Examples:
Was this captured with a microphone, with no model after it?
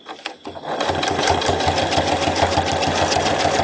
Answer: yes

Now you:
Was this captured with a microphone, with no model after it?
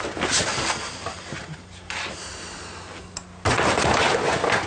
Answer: yes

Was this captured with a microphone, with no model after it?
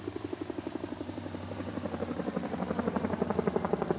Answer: no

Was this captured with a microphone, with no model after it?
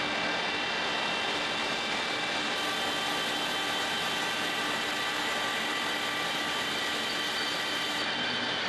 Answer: yes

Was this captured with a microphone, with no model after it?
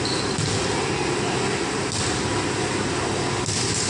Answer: yes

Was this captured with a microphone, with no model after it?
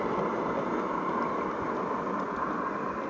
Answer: yes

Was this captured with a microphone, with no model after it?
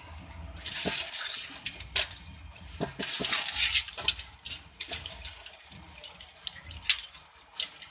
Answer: yes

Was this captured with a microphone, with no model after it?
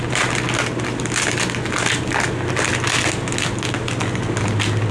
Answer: yes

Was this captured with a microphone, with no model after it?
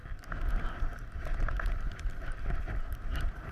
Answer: yes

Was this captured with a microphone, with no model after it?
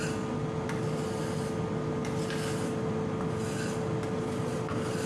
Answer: yes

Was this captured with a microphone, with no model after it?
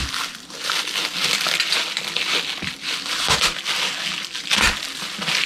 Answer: yes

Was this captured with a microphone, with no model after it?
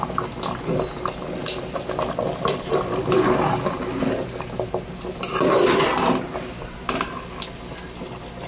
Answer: yes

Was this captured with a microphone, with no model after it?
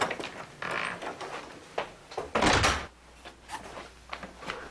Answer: yes